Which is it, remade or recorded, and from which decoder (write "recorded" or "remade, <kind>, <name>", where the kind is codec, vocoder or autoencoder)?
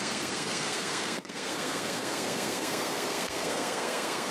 remade, codec, SNAC